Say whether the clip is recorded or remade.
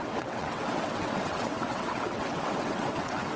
remade